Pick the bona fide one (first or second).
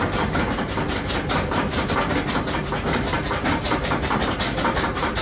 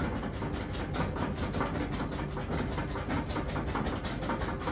second